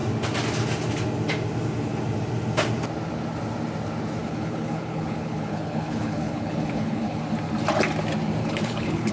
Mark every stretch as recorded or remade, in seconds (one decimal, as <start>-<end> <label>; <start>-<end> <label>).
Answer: 0.0-4.2 recorded; 4.2-7.2 remade; 7.2-8.4 recorded; 8.4-9.1 remade